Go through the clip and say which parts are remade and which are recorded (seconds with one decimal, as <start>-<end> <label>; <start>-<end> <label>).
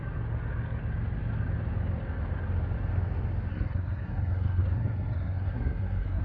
0.0-3.5 recorded; 3.5-6.2 remade